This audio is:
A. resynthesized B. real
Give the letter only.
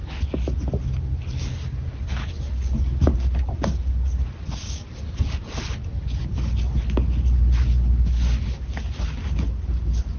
B